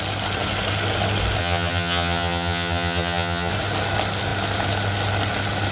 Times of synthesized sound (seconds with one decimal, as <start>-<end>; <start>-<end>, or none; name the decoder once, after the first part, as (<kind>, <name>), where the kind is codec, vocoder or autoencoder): 1.4-3.5 (vocoder, HiFi-GAN)